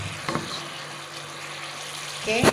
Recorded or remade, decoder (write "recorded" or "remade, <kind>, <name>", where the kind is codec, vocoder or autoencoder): recorded